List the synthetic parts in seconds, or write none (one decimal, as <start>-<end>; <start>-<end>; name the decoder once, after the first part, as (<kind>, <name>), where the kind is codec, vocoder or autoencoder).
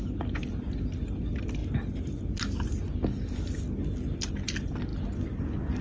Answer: none